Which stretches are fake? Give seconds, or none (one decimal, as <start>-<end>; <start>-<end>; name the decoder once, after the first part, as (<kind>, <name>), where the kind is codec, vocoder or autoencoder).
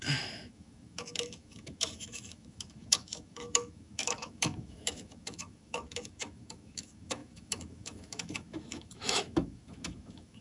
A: 0.0-10.4 (autoencoder, DAC-VAE)